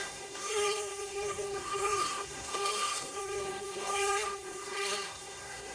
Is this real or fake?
fake